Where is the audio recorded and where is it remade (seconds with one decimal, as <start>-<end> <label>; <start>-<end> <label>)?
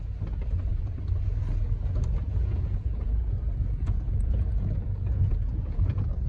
0.0-2.3 recorded; 2.3-5.8 remade; 5.8-6.3 recorded